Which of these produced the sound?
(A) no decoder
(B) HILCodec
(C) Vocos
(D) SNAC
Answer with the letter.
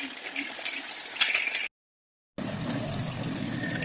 A